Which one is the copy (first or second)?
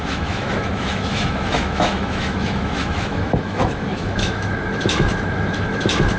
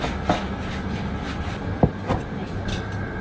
first